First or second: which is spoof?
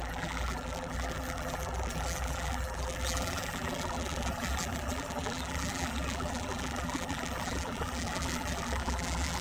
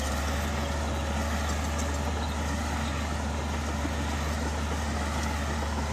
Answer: first